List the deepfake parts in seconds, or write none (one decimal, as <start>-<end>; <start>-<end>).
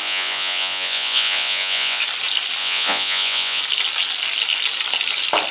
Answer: 0.0-2.0; 2.6-3.6